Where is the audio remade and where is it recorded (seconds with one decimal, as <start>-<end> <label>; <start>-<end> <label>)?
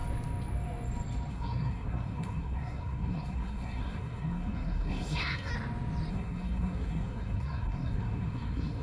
0.0-1.3 recorded; 1.3-5.5 remade; 5.5-6.1 recorded; 6.1-8.8 remade